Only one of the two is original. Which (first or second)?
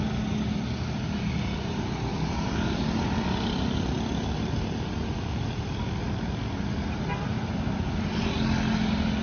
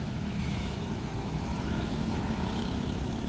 first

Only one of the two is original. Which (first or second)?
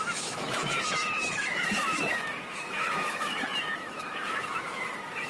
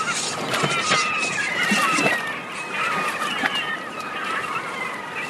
second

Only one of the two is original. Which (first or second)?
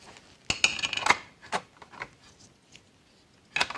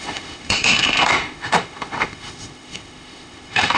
first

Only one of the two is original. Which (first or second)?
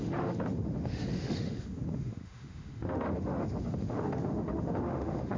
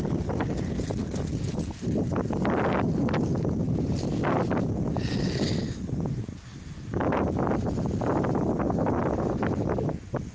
second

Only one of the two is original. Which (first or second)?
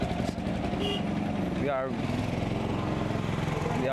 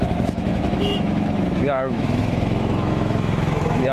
first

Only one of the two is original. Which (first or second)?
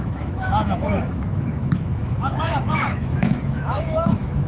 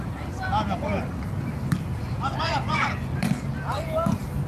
second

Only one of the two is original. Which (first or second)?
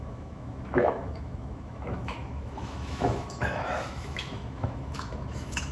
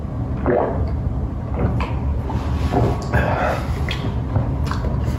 second